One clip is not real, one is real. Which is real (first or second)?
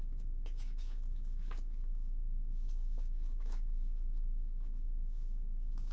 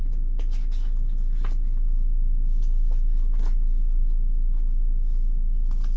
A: second